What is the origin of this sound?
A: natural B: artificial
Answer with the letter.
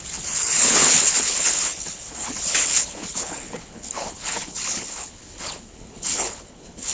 B